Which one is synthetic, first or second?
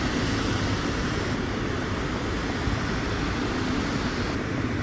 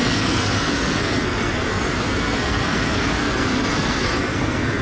second